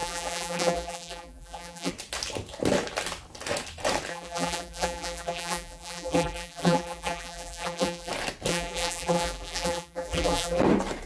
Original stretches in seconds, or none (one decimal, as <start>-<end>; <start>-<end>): 1.9-4.1; 8.1-8.5; 10.6-11.1